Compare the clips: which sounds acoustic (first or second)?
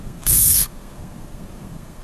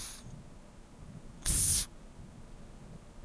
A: second